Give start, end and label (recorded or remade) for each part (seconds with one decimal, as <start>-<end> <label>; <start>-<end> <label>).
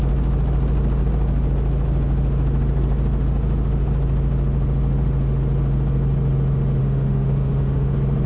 0.0-6.8 recorded; 6.8-7.9 remade; 7.9-8.3 recorded